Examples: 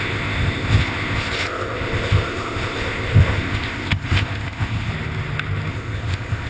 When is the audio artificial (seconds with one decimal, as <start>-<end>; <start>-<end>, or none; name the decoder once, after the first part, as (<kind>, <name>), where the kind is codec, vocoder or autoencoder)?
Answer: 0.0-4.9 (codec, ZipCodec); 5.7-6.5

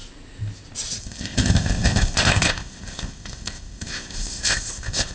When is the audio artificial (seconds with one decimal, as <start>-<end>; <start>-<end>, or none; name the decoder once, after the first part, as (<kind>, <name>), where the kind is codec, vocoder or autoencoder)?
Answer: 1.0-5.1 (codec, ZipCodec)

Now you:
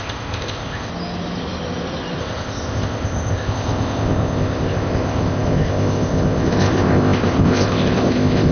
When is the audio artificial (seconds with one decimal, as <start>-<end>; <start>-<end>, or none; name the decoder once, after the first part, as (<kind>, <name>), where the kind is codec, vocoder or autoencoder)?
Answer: 0.0-0.9 (codec, ZipCodec); 2.2-8.5

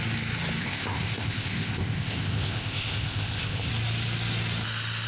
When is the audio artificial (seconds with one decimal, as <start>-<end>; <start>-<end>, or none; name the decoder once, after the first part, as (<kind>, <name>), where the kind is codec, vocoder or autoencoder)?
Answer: 0.6-3.7 (codec, ZipCodec)